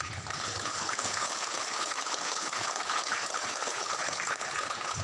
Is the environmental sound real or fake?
fake